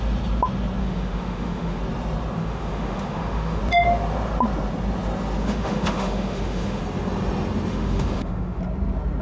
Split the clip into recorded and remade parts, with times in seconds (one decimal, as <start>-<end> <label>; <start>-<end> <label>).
0.0-0.8 recorded; 0.8-1.8 remade; 1.8-2.4 recorded; 2.4-3.6 remade; 3.6-5.4 recorded; 5.4-6.8 remade; 6.8-7.7 recorded; 7.7-8.6 remade; 8.6-9.2 recorded